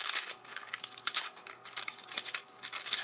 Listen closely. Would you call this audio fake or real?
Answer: fake